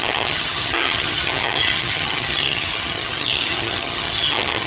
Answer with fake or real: fake